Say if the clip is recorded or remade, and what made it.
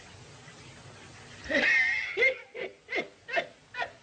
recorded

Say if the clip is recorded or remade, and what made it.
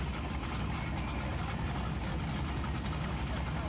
recorded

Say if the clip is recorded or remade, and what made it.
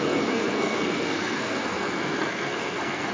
remade, codec, SNAC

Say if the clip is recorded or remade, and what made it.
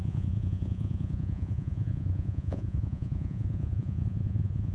remade, vocoder, Vocos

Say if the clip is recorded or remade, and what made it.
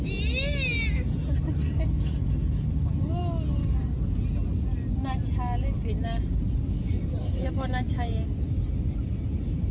recorded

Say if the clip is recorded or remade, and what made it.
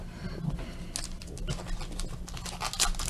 recorded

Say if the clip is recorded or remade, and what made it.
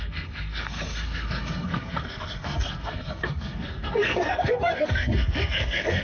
remade, codec, SNAC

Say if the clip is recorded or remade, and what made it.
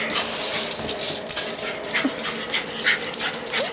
recorded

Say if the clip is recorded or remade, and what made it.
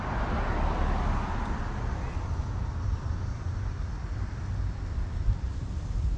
recorded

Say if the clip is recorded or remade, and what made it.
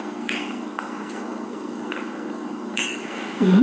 remade, codec, SNAC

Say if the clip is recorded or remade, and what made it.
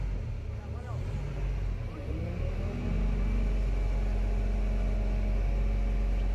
recorded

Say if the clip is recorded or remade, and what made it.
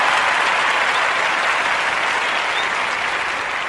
recorded